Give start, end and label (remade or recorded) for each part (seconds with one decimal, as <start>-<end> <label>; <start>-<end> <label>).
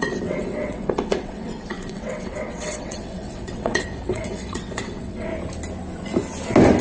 0.0-5.3 remade; 5.3-6.8 recorded